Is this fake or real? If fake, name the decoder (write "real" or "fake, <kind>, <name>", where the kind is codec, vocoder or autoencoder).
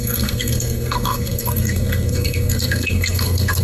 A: fake, codec, SNAC